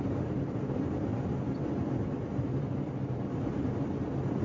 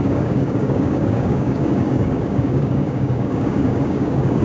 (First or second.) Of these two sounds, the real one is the first